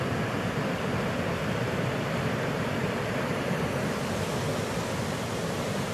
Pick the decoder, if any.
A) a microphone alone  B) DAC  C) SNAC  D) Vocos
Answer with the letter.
A